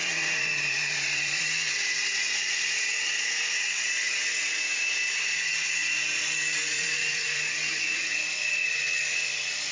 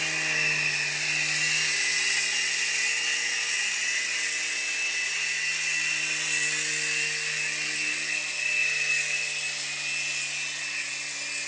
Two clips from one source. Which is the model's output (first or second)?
first